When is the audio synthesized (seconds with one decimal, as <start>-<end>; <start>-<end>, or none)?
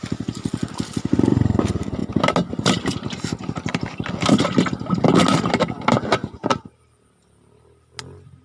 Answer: none